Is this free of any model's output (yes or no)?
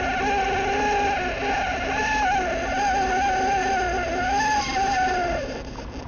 yes